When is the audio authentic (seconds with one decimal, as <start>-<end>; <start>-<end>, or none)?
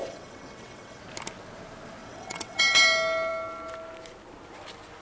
1.0-2.0; 2.6-5.0